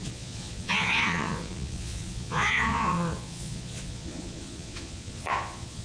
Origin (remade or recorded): remade